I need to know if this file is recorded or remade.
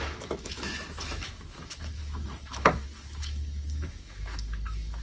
remade